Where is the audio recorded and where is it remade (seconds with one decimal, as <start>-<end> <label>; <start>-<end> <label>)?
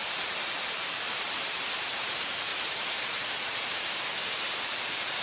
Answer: 0.0-5.2 remade